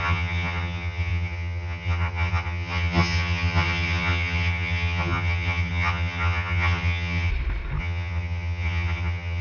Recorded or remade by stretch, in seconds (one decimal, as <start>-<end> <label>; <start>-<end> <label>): 0.0-7.3 remade; 7.3-7.8 recorded; 7.8-9.4 remade